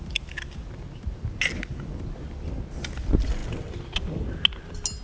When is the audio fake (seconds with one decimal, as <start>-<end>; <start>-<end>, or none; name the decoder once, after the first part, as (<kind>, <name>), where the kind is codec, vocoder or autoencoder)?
none